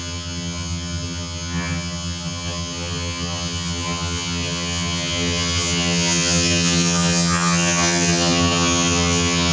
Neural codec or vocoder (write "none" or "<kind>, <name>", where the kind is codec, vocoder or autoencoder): vocoder, HiFi-GAN